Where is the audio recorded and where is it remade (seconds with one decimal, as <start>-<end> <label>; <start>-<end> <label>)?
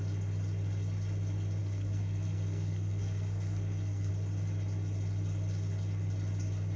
0.0-1.6 recorded; 1.6-4.1 remade; 4.1-6.8 recorded